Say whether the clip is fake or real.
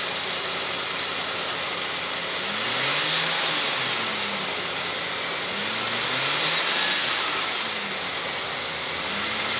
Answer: real